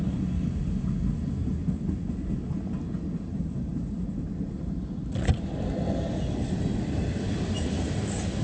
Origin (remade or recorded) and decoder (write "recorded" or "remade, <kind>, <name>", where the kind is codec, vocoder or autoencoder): recorded